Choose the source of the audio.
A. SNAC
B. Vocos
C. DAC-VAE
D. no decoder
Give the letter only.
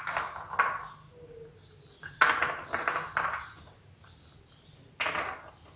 D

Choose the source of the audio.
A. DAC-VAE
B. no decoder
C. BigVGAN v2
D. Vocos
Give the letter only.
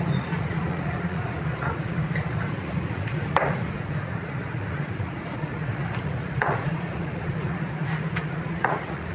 D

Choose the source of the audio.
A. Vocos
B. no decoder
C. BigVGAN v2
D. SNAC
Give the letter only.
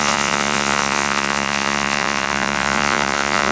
A